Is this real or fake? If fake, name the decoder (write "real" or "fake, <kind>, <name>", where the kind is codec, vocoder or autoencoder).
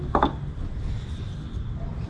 real